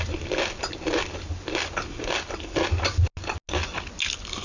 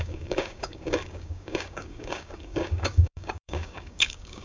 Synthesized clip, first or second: second